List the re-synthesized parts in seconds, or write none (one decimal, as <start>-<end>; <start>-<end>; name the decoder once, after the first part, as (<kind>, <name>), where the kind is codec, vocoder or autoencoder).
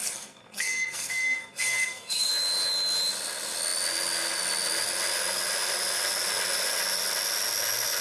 0.0-2.3 (codec, SNAC)